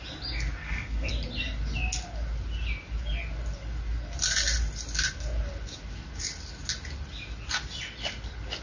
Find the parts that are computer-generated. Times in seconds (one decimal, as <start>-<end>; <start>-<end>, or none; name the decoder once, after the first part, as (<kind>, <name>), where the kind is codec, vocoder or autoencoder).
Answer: 0.6-1.1 (codec, SNAC)